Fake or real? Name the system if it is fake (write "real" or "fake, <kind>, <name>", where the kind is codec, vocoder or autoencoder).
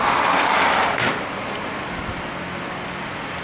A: real